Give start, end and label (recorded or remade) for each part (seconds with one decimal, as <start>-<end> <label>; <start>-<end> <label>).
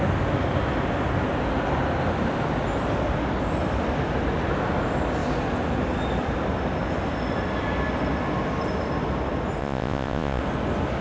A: 0.0-9.6 recorded; 9.6-10.4 remade; 10.4-11.0 recorded